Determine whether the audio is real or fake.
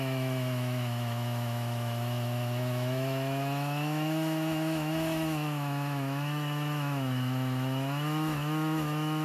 fake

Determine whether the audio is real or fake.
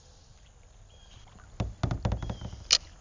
real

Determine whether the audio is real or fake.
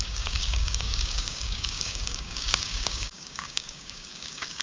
fake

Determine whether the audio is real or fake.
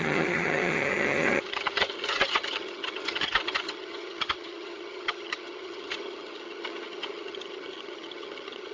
fake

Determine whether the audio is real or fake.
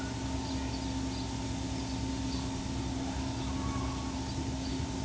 real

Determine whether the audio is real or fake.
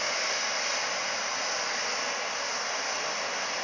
real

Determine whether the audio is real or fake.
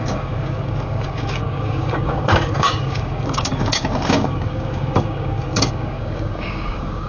fake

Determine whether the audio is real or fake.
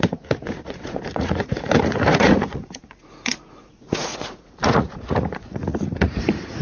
fake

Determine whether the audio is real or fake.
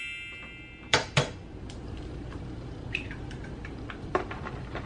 fake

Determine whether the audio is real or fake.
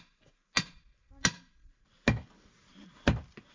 real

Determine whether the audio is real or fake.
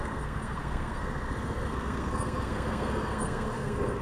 fake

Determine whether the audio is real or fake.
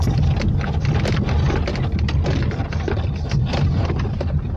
real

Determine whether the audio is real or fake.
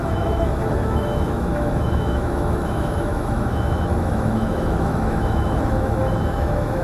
fake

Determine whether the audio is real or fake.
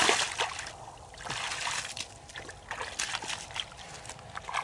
real